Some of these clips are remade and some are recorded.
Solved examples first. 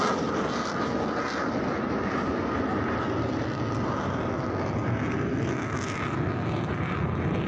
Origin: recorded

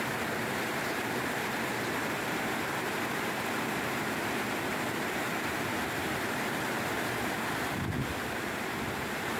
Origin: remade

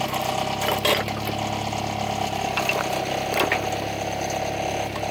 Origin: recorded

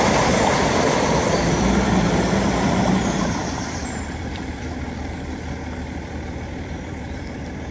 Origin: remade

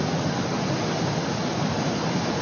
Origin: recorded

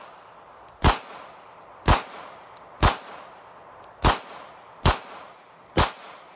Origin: recorded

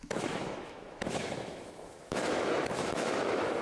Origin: remade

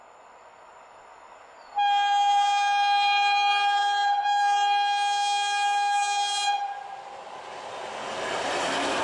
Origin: recorded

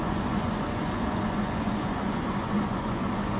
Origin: remade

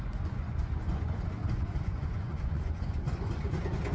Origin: remade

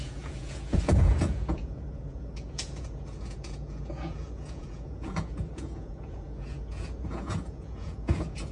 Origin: remade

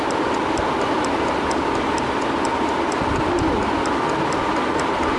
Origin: recorded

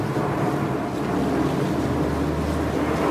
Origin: recorded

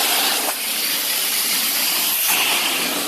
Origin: recorded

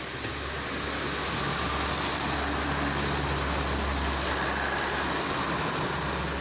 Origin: recorded